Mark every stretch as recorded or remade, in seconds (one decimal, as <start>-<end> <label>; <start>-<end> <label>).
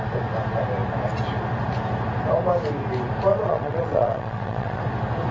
0.0-3.3 recorded; 3.3-4.8 remade; 4.8-5.3 recorded